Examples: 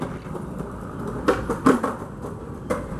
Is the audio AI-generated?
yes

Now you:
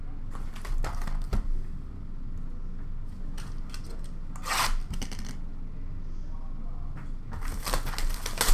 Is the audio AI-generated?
no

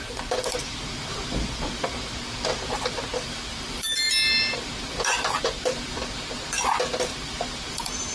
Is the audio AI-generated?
yes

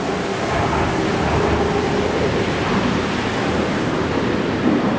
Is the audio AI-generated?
no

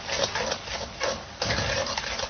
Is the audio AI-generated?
no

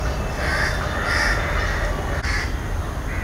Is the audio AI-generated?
no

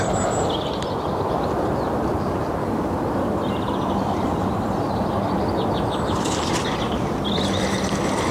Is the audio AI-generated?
no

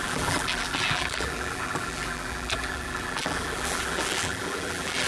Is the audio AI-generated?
yes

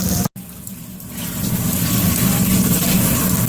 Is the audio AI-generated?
no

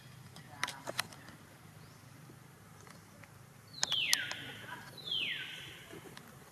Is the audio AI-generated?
no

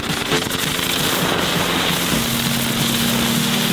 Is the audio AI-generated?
no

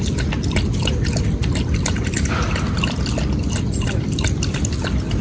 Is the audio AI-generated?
yes